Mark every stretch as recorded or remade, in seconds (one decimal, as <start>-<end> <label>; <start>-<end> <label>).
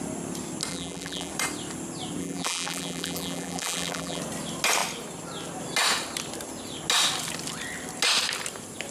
0.0-0.7 recorded; 0.7-1.3 remade; 1.3-2.2 recorded; 2.2-4.2 remade; 4.2-8.9 recorded